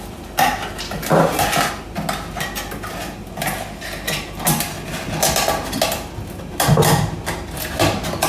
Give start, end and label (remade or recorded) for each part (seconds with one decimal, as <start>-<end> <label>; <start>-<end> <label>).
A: 0.0-1.1 recorded; 1.1-1.7 remade; 1.7-8.3 recorded